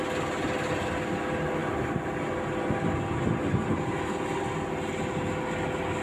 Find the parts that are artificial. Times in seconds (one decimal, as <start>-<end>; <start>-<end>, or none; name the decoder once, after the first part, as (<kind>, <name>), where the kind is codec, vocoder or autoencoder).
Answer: none